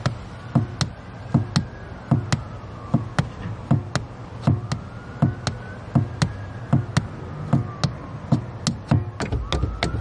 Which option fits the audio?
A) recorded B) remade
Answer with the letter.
A